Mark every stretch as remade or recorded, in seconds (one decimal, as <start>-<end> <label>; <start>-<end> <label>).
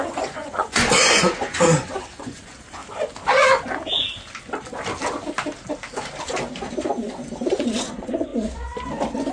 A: 0.0-2.8 remade; 2.8-7.5 recorded; 7.5-8.3 remade; 8.3-9.3 recorded